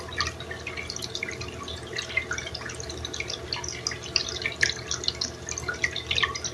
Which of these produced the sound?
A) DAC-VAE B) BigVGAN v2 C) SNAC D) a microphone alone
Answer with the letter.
D